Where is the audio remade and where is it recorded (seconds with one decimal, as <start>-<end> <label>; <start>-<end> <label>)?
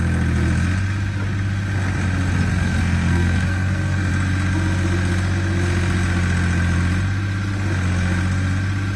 0.0-2.5 recorded; 2.5-4.1 remade; 4.1-9.0 recorded